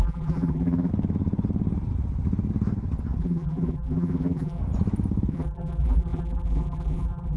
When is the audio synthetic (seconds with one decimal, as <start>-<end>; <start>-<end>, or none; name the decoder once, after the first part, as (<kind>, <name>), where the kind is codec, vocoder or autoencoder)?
0.0-0.9 (vocoder, BigVGAN v2); 3.2-4.6; 5.3-7.4